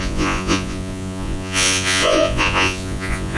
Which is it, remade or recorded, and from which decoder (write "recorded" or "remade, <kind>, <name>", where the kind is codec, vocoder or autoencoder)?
remade, vocoder, Vocos